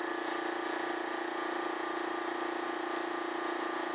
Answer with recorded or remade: recorded